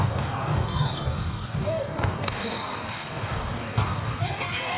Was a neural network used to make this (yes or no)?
yes